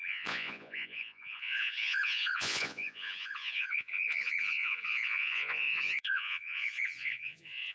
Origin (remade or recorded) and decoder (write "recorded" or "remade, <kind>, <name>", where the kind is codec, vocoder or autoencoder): remade, vocoder, Vocos